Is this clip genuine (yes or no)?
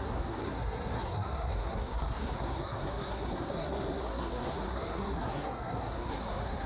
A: no